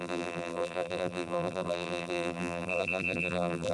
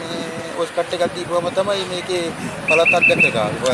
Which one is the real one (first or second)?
second